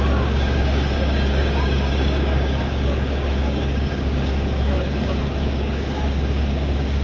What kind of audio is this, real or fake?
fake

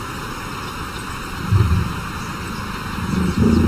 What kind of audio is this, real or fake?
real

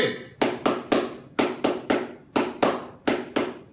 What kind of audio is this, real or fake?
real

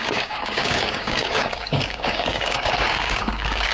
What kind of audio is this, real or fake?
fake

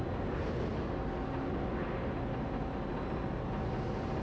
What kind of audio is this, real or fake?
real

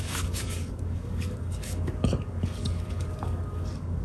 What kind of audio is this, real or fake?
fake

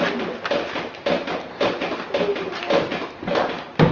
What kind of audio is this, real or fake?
real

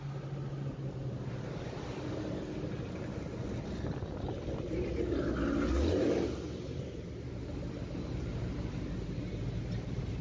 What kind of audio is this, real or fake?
real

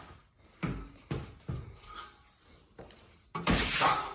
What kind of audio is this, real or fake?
real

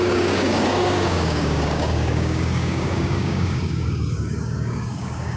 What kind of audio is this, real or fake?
fake